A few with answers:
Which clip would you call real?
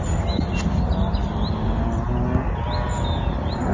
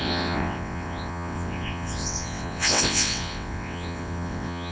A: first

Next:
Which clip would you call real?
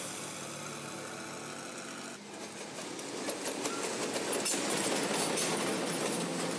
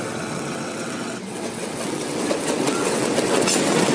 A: first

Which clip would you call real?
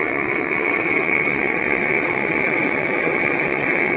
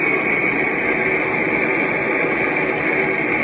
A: second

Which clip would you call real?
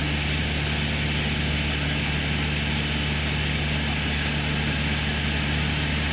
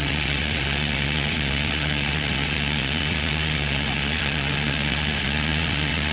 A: first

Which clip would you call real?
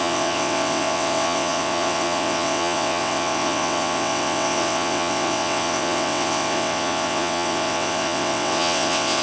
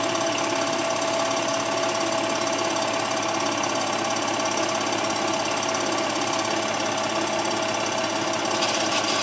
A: second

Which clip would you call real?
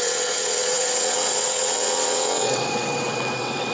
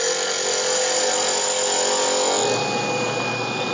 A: second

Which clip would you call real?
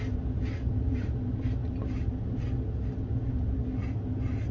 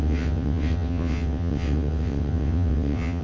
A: first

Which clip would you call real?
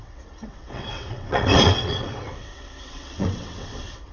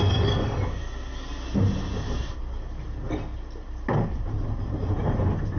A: second